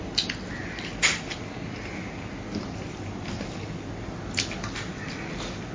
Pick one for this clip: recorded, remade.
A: recorded